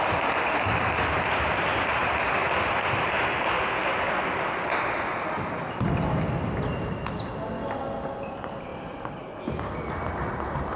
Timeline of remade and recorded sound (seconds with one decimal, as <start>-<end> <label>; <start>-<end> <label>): 0.0-10.8 recorded